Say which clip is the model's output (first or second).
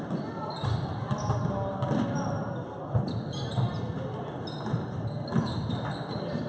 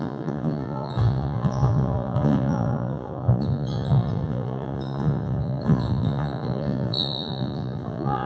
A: second